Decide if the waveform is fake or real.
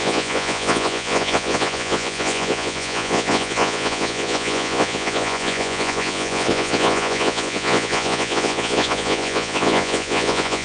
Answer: fake